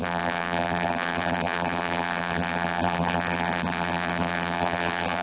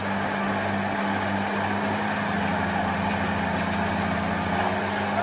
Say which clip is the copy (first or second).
first